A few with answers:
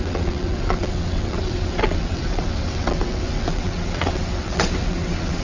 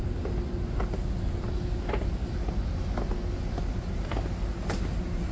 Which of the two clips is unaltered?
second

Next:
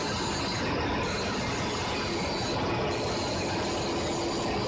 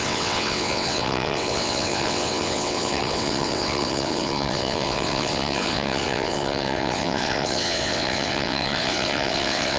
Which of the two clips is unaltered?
first